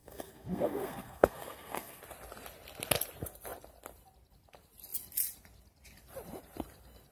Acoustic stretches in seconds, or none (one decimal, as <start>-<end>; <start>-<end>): 2.0-7.1